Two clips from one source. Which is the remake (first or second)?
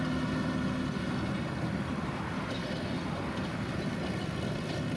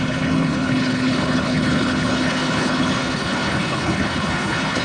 second